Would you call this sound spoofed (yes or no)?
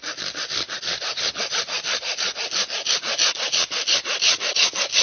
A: no